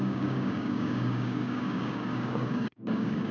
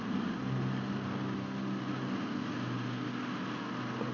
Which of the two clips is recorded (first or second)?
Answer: second